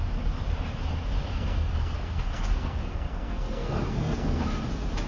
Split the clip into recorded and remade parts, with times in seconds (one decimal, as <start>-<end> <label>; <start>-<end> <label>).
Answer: 0.0-1.3 recorded; 1.3-4.4 remade; 4.4-5.1 recorded